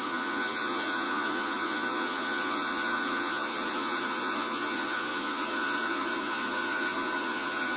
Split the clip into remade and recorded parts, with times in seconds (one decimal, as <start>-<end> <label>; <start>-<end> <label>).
0.0-7.8 remade